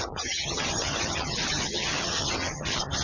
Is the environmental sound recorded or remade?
remade